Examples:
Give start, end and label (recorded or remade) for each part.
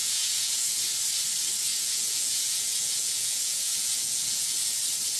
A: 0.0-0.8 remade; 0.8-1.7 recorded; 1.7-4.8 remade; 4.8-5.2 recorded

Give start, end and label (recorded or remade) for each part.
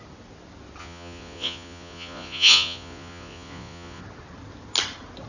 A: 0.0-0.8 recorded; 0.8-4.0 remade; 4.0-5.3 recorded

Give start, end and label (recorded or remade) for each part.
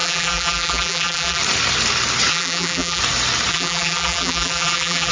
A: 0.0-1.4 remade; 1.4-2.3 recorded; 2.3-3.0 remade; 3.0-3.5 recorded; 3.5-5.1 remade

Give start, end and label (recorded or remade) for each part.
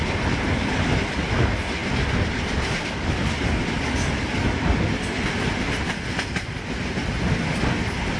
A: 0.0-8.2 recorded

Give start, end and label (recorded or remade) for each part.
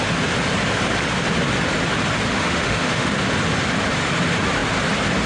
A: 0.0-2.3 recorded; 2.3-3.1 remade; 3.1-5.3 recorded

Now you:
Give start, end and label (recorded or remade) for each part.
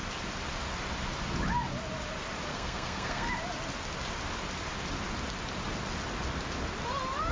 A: 0.0-2.5 recorded; 2.5-3.3 remade; 3.3-7.3 recorded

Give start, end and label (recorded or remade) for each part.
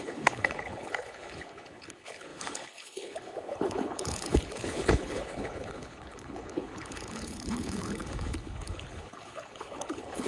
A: 0.0-10.3 remade